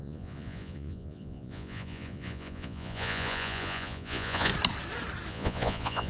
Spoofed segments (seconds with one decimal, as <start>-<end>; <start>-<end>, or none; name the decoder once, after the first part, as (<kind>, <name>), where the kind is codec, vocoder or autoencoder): 0.0-4.5 (vocoder, Vocos); 5.3-6.1